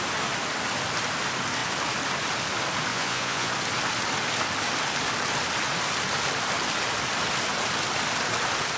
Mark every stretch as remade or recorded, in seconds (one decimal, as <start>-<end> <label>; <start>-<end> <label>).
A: 0.0-2.9 recorded; 2.9-3.5 remade; 3.5-8.8 recorded